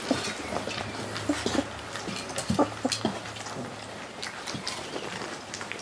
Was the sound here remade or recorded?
recorded